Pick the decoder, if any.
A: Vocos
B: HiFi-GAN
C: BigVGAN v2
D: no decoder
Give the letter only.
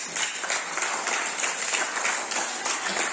D